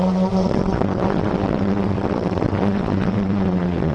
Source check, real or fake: fake